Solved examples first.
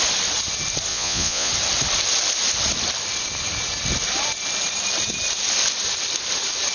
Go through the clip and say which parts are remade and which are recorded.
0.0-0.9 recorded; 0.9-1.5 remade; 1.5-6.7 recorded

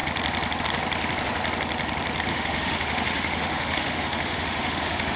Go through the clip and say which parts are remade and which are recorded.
0.0-2.3 recorded; 2.3-5.2 remade

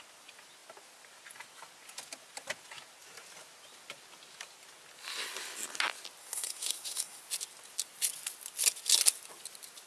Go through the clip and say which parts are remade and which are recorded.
0.0-6.2 recorded; 6.2-7.2 remade; 7.2-9.9 recorded

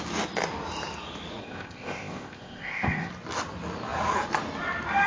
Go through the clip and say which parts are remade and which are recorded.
0.0-1.4 recorded; 1.4-3.1 remade; 3.1-5.1 recorded

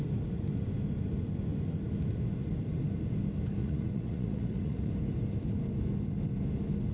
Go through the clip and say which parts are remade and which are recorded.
0.0-3.6 recorded; 3.6-4.9 remade; 4.9-6.9 recorded